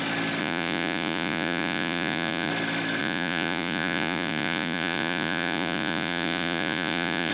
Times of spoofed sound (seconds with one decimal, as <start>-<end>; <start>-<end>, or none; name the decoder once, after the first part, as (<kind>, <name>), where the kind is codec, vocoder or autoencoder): 0.4-2.5 (vocoder, Vocos); 3.0-7.3